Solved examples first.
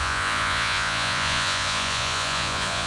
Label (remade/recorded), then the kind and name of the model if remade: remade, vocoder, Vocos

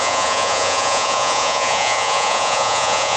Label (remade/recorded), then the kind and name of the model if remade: remade, vocoder, Vocos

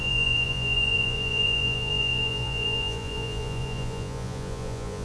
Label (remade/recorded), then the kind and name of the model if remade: remade, vocoder, Vocos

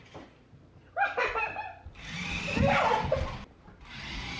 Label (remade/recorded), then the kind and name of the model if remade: recorded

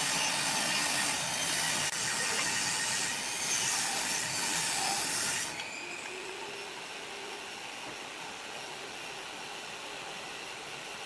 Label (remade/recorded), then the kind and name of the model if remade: recorded